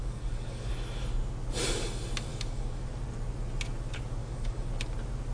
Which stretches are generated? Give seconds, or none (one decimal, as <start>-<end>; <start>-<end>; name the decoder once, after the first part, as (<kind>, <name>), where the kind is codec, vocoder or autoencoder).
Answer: 0.0-0.7 (codec, DAC); 2.3-2.9; 4.2-4.7